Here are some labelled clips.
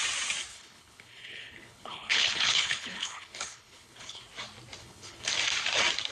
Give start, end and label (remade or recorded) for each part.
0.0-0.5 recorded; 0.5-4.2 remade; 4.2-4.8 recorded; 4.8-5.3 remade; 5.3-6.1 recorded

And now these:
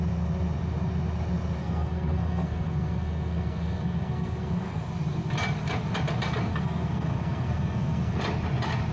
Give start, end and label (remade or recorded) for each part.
0.0-1.6 recorded; 1.6-4.8 remade; 4.8-6.5 recorded; 6.5-8.2 remade; 8.2-8.9 recorded

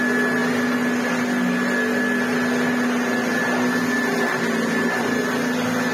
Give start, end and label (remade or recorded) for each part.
0.0-5.9 recorded

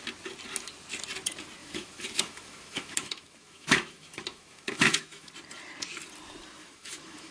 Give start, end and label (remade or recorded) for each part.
0.0-1.6 recorded; 1.6-5.3 remade; 5.3-6.6 recorded; 6.6-7.3 remade

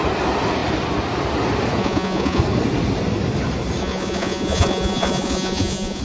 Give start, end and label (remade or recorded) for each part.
0.0-1.8 recorded; 1.8-2.4 remade; 2.4-3.8 recorded; 3.8-6.0 remade

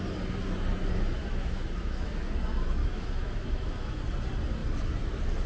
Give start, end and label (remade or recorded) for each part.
0.0-1.2 recorded; 1.2-2.1 remade; 2.1-2.8 recorded; 2.8-4.0 remade; 4.0-5.5 recorded

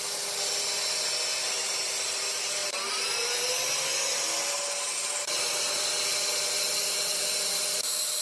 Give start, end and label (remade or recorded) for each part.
0.0-8.2 recorded

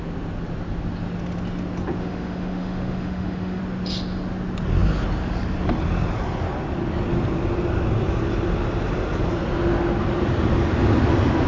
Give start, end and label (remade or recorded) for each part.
0.0-2.0 recorded; 2.0-3.6 remade; 3.6-11.5 recorded